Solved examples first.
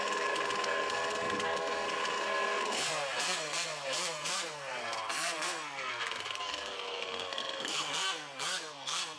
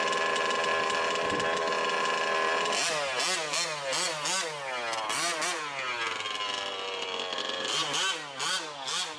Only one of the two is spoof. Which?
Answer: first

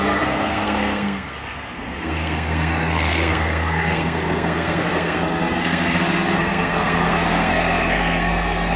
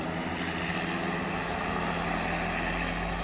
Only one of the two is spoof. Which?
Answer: first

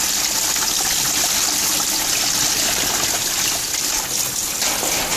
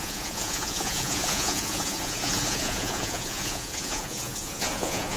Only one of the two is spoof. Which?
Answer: second